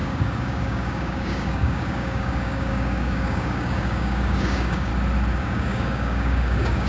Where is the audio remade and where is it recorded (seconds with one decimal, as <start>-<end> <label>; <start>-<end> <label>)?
0.0-4.9 remade; 4.9-5.4 recorded; 5.4-6.9 remade